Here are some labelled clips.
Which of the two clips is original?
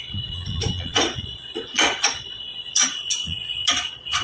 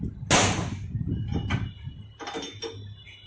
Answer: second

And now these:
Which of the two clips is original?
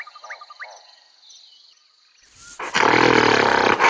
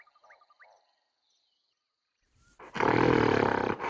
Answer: first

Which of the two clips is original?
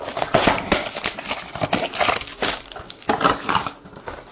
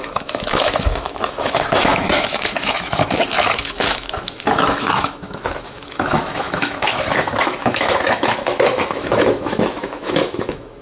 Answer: first